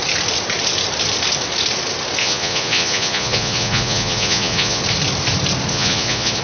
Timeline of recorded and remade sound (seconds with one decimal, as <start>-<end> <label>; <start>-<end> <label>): 0.0-2.2 recorded; 2.2-4.8 remade; 4.8-5.7 recorded; 5.7-6.4 remade